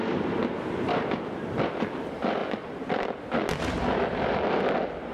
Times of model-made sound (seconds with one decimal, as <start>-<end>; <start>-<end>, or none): none